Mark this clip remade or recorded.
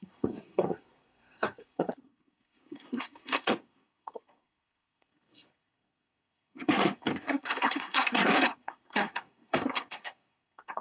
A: remade